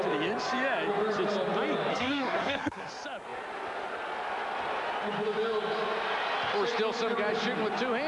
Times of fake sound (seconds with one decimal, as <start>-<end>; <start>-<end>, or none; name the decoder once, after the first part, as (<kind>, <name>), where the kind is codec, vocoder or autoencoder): 1.9-2.9 (codec, SNAC)